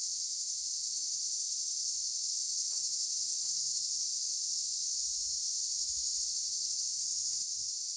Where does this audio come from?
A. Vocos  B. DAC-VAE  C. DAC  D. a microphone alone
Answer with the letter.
B